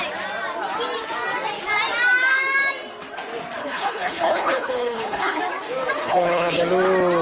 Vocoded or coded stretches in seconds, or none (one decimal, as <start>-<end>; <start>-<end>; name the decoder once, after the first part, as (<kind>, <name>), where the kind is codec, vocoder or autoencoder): 3.6-5.4 (codec, HILCodec); 6.0-6.6